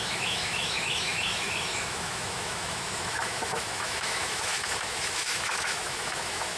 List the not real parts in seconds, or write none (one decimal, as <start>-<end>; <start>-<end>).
0.0-6.6